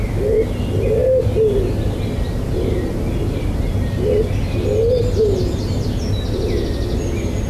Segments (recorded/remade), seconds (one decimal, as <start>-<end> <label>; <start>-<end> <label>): 0.0-7.5 recorded